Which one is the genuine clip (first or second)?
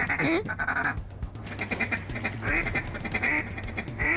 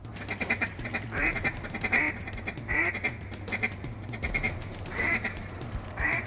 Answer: first